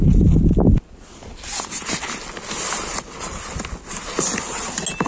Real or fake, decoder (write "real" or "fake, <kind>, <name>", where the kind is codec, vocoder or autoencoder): real